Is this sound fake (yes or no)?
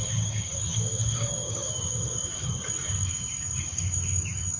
yes